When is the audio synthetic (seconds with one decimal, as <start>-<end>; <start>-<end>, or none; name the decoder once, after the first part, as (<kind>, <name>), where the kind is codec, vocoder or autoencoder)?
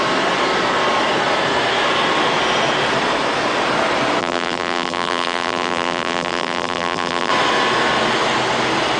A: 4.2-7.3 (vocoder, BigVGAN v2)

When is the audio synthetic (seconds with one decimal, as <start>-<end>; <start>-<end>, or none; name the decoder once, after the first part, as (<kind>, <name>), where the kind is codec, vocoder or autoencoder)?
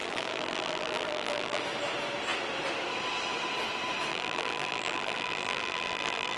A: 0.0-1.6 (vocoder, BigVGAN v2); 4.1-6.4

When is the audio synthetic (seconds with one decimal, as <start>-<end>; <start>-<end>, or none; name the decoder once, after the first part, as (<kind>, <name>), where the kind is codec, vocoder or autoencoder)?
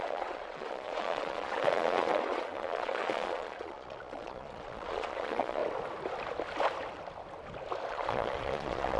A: 0.0-5.6 (vocoder, Vocos); 7.9-9.0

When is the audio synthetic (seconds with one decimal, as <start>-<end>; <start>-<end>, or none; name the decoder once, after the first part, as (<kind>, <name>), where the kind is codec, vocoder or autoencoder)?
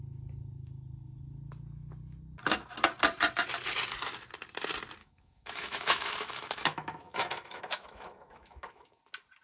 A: 5.0-9.0 (autoencoder, DAC-VAE)